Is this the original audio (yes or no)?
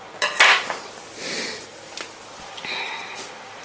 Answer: yes